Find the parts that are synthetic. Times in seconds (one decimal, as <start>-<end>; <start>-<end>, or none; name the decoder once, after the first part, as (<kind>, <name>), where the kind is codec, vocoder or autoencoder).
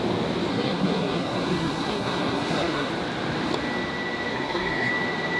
0.5-2.9 (codec, SNAC); 4.3-4.9